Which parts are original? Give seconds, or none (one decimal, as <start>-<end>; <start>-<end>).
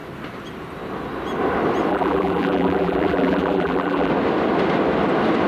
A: 0.0-1.9; 4.1-5.5